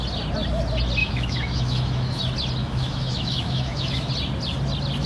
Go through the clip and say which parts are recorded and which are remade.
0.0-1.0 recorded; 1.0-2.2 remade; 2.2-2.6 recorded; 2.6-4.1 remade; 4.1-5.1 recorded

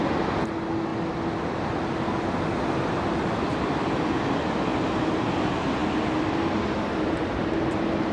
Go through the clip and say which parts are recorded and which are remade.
0.0-8.1 recorded

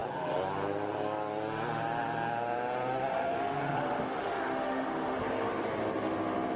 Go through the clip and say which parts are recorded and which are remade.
0.0-3.1 recorded; 3.1-5.2 remade; 5.2-6.6 recorded

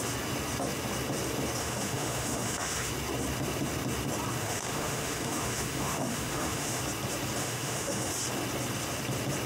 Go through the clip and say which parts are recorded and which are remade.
0.0-1.6 recorded; 1.6-2.9 remade; 2.9-4.4 recorded; 4.4-6.8 remade; 6.8-7.4 recorded; 7.4-8.1 remade; 8.1-9.5 recorded

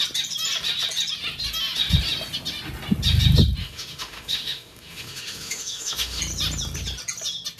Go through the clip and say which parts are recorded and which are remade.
0.0-3.6 recorded; 3.6-6.2 remade; 6.2-7.6 recorded

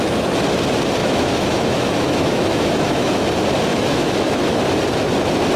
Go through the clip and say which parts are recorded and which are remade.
0.0-1.0 recorded; 1.0-3.2 remade; 3.2-3.7 recorded; 3.7-4.6 remade; 4.6-5.6 recorded

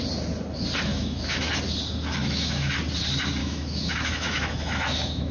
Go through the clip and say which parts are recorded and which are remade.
0.0-0.9 recorded; 0.9-1.5 remade; 1.5-2.2 recorded; 2.2-2.7 remade; 2.7-3.4 recorded; 3.4-5.3 remade